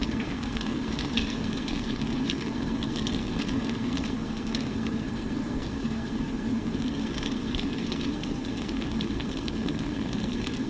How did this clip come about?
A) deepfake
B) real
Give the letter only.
A